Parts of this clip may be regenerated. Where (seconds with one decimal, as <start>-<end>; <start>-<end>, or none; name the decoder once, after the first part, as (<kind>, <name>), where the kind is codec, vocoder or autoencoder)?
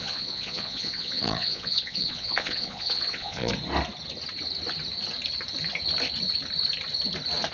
0.0-3.5 (vocoder, Vocos)